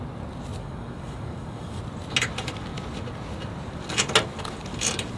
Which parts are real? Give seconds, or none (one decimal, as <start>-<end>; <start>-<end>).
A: 0.0-0.6; 1.8-5.2